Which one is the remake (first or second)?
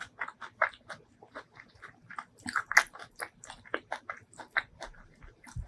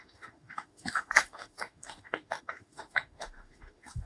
second